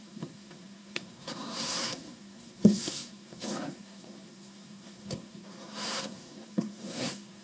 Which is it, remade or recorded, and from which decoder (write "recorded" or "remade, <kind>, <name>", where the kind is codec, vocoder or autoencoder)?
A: remade, codec, SNAC